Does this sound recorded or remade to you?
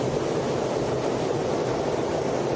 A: recorded